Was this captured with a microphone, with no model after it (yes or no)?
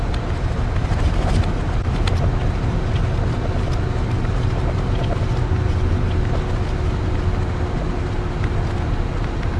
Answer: yes